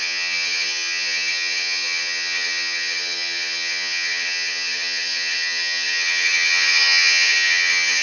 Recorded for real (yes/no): no